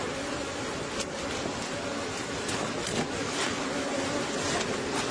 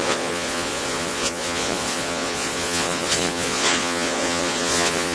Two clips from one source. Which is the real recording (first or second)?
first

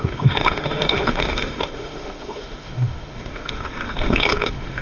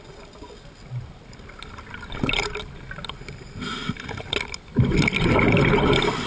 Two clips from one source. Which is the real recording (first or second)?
second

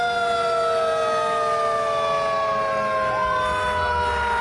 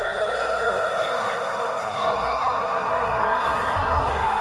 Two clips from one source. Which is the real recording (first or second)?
first